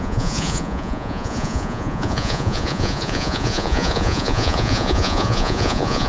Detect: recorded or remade remade